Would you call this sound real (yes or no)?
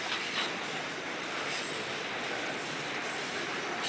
yes